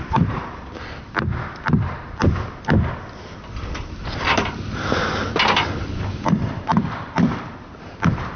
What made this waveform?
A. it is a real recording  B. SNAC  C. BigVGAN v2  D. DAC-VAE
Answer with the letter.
C